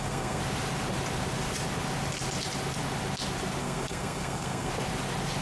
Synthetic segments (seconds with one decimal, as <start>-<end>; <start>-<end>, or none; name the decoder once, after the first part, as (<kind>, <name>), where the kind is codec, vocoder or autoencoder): 0.0-0.4 (codec, SNAC); 3.6-4.7